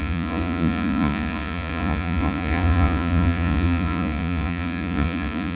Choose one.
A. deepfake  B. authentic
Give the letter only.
A